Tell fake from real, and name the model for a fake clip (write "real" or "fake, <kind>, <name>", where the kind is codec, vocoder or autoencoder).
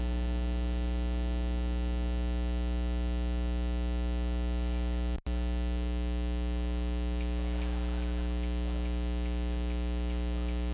real